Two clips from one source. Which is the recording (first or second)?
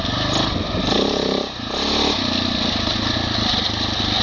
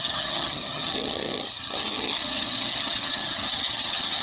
first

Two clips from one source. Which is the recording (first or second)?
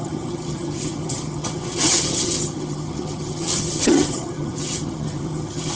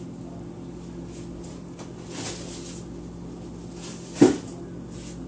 second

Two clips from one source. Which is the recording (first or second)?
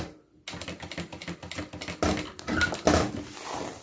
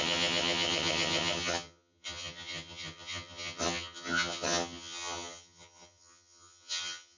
first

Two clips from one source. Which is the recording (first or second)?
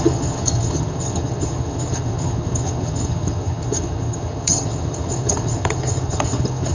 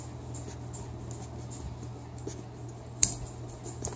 second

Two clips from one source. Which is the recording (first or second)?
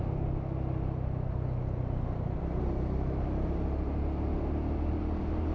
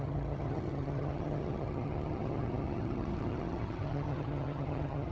first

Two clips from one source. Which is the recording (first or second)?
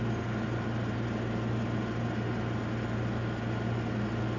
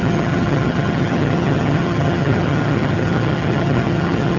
first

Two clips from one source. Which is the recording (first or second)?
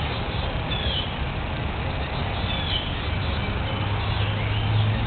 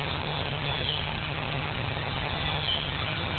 first